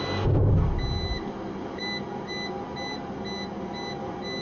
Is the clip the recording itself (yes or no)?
yes